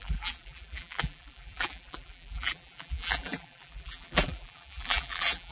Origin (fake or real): fake